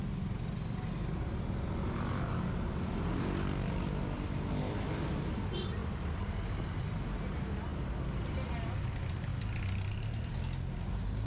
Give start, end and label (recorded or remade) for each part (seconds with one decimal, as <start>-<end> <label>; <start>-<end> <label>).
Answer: 0.0-11.3 recorded

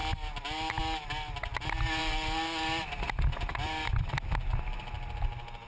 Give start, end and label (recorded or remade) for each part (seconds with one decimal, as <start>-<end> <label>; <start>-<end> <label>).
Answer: 0.0-5.7 recorded

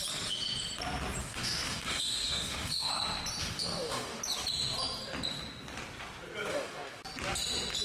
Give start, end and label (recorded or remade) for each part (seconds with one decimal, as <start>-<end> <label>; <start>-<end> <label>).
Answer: 0.0-1.2 recorded; 1.2-2.9 remade; 2.9-3.4 recorded; 3.4-4.2 remade; 4.2-6.5 recorded; 6.5-7.0 remade; 7.0-7.8 recorded